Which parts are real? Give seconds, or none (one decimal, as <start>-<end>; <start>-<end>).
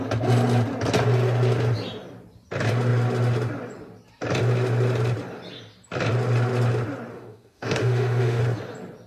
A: 0.0-7.1; 8.4-9.1